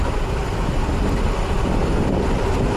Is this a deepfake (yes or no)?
yes